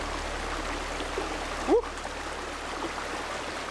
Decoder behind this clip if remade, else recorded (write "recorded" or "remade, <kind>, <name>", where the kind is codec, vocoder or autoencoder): recorded